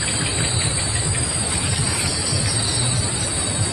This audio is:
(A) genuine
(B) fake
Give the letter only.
B